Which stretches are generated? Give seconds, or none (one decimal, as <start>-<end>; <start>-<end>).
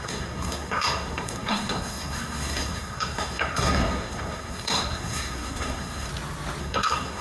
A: 0.0-6.1; 6.6-7.2